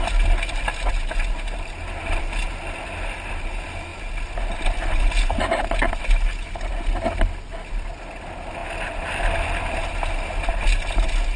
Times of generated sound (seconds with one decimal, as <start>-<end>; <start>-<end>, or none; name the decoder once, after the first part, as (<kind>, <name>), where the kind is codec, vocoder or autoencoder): none